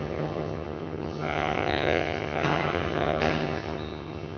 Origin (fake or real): fake